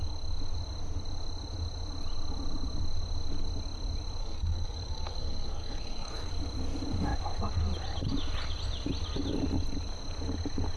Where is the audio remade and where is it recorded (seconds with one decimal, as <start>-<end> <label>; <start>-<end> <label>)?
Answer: 0.0-4.2 recorded; 4.2-6.3 remade; 6.3-10.8 recorded